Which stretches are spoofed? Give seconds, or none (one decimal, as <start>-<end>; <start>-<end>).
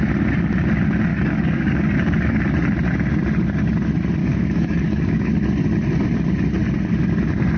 1.1-2.4; 4.2-5.3